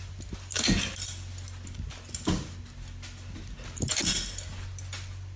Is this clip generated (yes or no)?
no